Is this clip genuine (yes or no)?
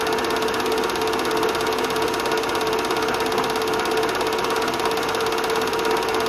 yes